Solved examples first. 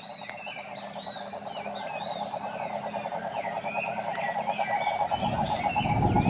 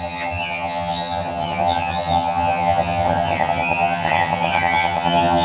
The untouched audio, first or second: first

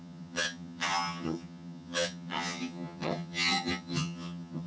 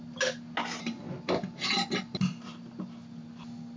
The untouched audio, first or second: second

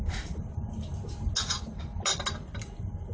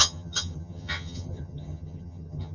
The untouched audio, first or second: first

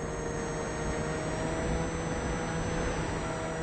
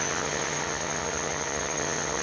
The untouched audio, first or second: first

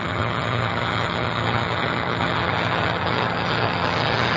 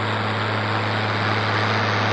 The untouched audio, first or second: second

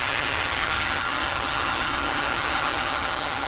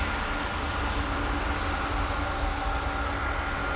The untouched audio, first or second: second